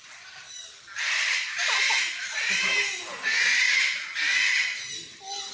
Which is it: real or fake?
real